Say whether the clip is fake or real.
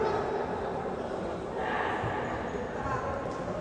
real